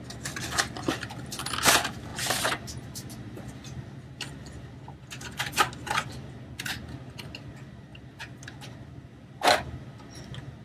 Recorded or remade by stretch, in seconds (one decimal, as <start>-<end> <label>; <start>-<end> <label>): 0.0-10.6 recorded